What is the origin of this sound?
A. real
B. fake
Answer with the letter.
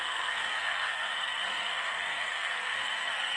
B